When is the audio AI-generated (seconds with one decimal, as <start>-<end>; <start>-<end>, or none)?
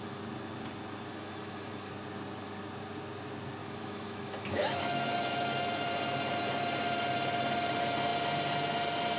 1.1-1.9; 3.6-5.9